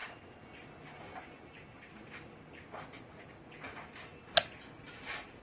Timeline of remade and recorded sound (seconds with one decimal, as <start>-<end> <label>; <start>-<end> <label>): 0.0-5.4 recorded